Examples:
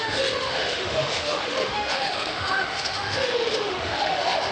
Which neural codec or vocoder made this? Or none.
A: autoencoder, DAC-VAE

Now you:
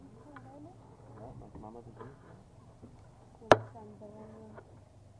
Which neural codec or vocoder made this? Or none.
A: none